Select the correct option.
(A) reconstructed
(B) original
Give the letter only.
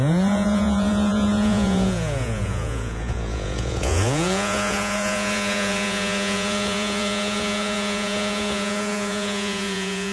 A